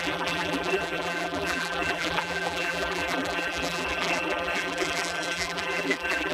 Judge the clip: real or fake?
fake